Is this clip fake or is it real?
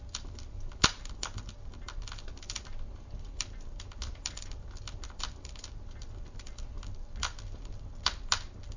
real